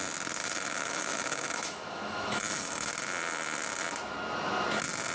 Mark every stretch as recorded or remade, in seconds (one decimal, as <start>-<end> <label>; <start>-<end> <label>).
0.0-0.4 recorded; 0.4-2.9 remade; 2.9-5.1 recorded